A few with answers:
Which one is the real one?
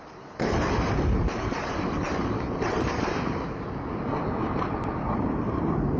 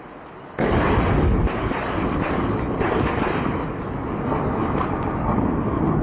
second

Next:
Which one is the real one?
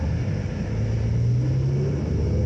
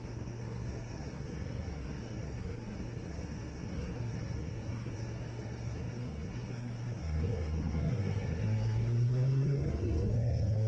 first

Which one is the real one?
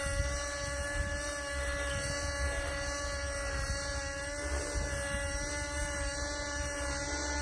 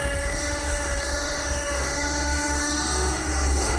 first